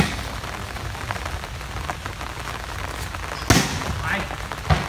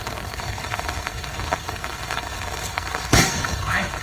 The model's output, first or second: second